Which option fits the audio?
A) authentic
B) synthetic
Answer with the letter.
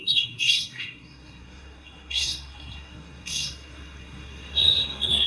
B